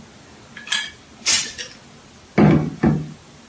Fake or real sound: real